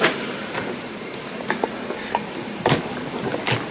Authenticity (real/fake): real